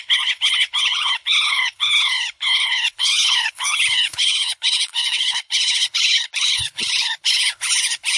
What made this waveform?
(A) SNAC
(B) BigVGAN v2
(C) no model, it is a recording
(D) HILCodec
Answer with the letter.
D